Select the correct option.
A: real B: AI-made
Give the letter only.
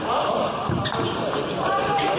A